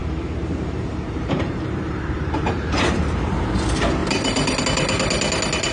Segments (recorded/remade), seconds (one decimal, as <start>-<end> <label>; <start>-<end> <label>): 0.0-3.3 remade; 3.3-5.7 recorded